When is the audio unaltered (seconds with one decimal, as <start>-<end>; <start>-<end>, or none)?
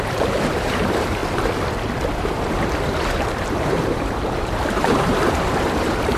1.2-2.2